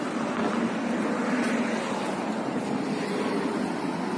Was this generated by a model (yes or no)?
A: no